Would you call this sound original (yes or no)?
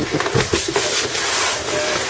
yes